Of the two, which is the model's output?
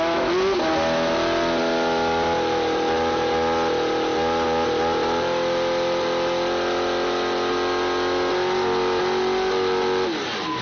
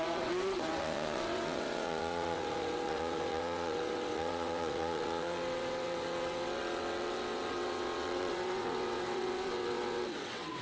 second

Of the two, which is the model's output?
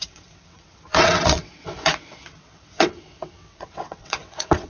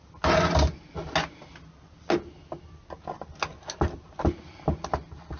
first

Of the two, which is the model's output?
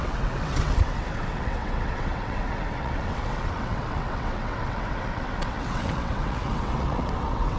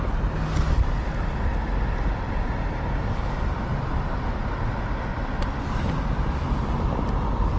first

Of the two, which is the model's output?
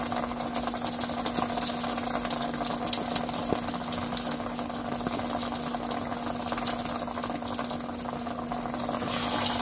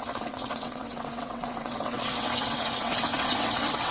second